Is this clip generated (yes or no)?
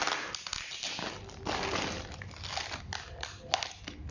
no